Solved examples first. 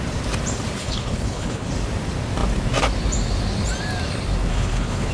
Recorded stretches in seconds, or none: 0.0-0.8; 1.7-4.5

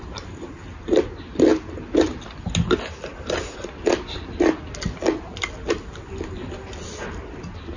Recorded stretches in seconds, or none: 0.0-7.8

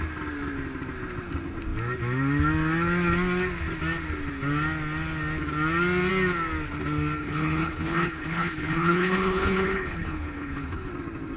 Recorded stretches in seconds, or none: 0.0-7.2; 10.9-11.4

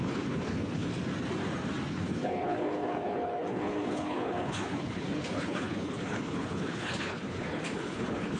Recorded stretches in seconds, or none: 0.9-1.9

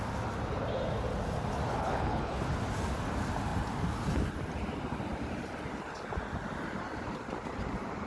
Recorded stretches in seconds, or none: 0.0-1.7; 2.4-8.1

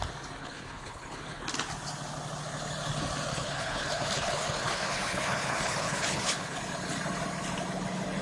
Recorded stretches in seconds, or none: 0.0-0.4; 1.4-3.3; 6.6-8.2